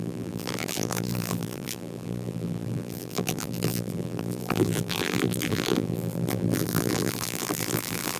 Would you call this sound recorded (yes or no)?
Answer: no